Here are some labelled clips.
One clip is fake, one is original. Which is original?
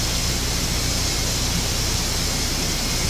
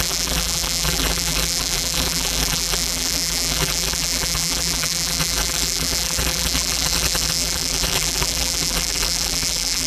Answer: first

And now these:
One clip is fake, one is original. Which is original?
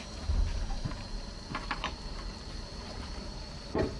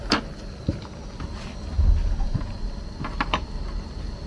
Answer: second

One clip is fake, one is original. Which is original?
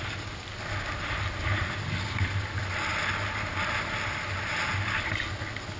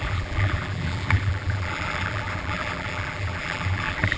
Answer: first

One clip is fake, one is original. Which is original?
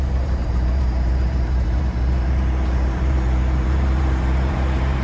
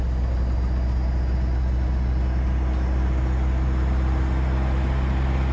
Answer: second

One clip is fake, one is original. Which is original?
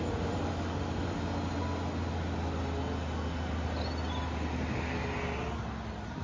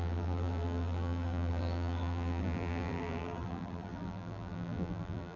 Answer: first